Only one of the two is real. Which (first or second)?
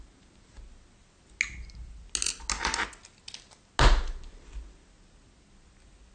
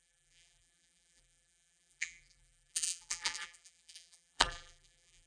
first